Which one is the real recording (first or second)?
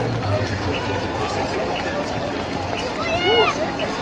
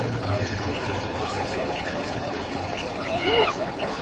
first